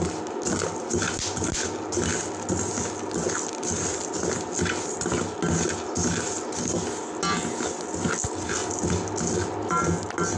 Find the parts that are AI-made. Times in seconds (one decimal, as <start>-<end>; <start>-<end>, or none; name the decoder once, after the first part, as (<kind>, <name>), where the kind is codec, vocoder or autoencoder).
none